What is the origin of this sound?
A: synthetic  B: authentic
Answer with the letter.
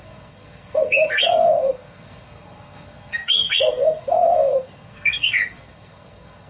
A